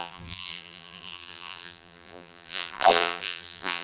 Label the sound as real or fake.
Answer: fake